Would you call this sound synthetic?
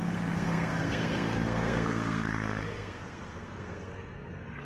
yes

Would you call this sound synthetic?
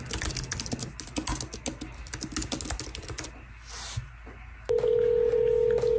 no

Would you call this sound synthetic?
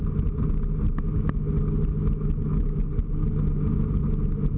no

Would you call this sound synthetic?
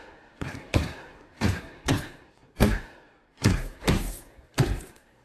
yes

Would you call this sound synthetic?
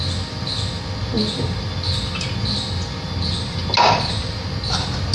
no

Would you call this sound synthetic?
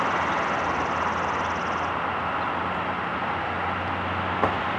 no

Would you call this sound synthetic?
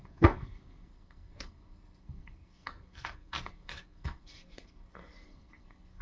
yes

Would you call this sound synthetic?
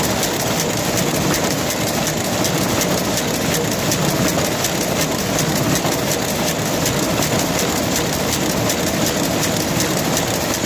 no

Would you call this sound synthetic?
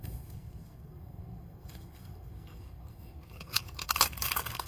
yes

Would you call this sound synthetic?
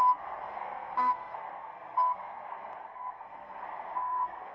yes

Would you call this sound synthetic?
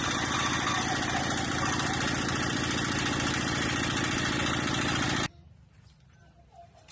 no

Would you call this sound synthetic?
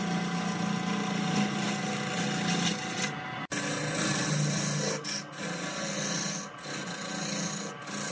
no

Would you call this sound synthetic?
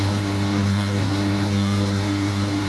yes